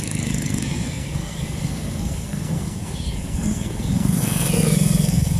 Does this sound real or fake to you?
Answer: fake